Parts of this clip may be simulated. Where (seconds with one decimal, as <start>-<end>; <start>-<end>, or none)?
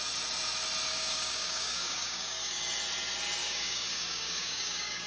0.9-2.6; 3.4-5.1